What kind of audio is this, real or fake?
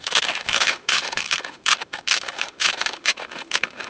fake